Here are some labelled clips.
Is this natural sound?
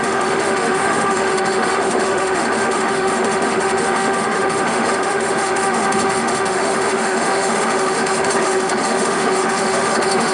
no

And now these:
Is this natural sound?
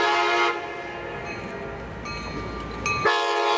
yes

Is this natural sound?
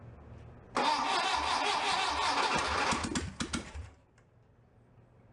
yes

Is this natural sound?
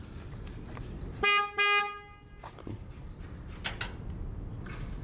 yes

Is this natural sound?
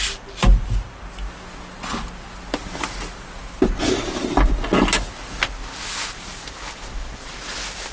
yes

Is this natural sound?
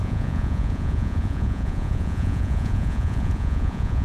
no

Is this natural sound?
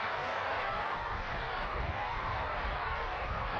no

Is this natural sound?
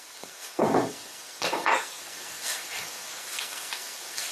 no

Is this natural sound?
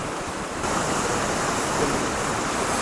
yes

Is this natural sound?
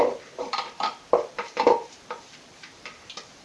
no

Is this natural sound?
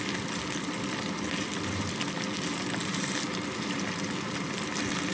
yes